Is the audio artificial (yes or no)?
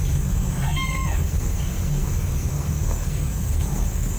yes